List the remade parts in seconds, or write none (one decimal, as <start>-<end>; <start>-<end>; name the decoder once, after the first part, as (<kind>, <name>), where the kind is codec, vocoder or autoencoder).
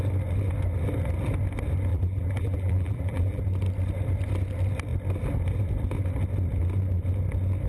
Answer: 1.9-3.4 (vocoder, BigVGAN v2)